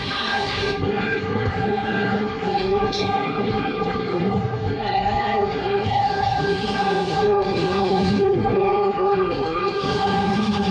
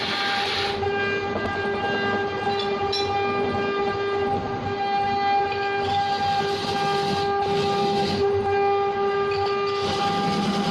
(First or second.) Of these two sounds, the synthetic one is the first